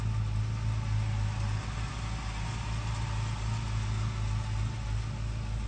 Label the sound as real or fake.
real